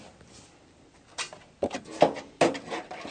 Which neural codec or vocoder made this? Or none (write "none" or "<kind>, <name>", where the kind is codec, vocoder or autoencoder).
none